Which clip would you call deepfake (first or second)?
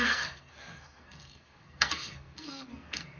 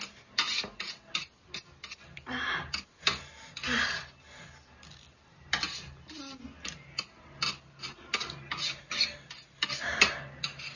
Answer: first